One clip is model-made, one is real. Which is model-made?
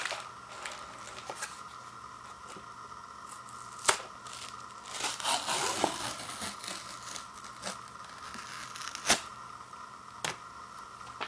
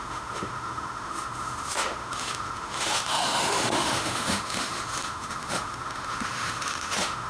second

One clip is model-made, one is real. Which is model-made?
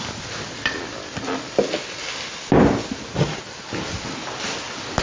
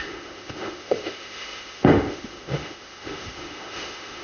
second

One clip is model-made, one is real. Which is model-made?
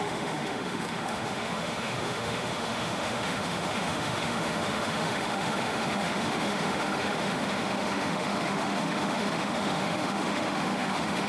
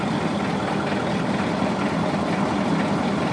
first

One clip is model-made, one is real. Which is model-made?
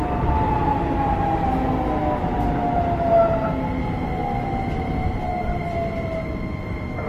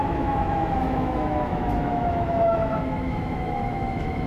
second